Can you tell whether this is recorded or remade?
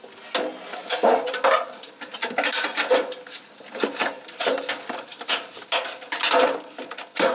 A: recorded